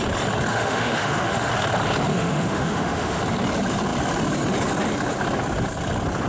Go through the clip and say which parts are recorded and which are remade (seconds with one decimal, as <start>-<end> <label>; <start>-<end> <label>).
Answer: 0.0-0.5 recorded; 0.5-1.5 remade; 1.5-2.1 recorded; 2.1-3.2 remade; 3.2-6.3 recorded